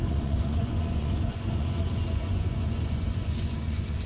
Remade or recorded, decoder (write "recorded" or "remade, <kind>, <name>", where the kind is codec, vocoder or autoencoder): remade, vocoder, Vocos